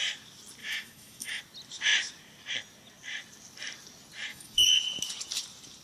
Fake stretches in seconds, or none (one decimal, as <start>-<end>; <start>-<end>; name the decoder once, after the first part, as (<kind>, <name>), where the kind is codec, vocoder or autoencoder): 0.6-1.4 (autoencoder, DAC-VAE); 4.3-4.8